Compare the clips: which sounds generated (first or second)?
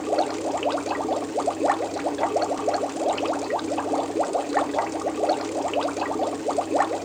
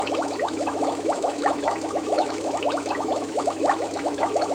second